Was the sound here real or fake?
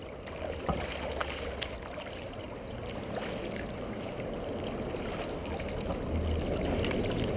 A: real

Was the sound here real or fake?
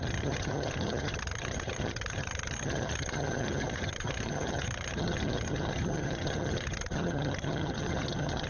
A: fake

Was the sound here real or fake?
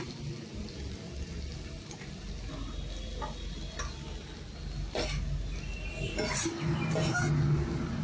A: real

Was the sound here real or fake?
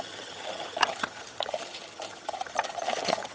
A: fake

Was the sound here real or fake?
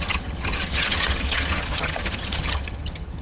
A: fake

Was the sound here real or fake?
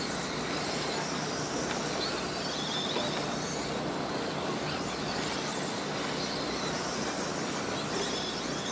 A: real